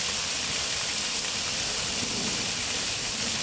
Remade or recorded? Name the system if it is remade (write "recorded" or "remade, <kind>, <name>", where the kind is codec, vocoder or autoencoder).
remade, vocoder, BigVGAN v2